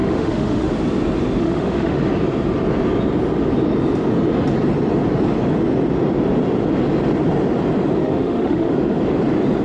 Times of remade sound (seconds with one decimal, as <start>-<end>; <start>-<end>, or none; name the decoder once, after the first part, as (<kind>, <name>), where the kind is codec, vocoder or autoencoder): 0.0-0.7 (autoencoder, DAC-VAE); 1.4-2.0; 8.0-8.7